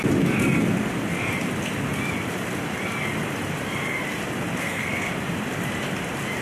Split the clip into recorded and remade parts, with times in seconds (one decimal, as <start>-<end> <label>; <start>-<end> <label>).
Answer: 0.0-4.6 recorded; 4.6-5.1 remade; 5.1-6.4 recorded